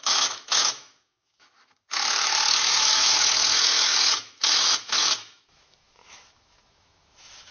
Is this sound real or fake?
fake